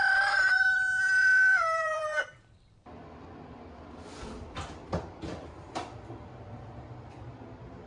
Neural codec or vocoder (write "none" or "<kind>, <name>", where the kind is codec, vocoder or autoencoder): vocoder, BigVGAN v2